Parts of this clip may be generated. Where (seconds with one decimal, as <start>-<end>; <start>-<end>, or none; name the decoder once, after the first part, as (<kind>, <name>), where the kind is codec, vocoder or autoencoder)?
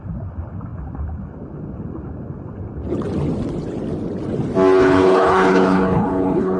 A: 4.8-6.6 (codec, HILCodec)